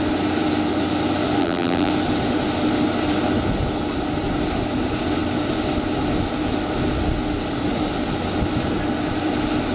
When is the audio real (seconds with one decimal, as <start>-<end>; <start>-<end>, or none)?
0.0-1.4; 1.9-9.7